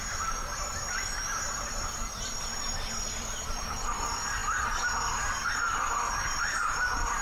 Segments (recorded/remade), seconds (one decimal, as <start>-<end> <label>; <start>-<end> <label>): 0.0-4.4 remade; 4.4-5.5 recorded; 5.5-7.2 remade